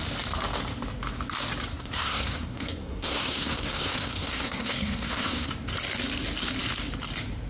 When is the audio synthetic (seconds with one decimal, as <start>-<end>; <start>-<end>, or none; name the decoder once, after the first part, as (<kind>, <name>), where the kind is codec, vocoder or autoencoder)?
1.7-5.5 (codec, SNAC)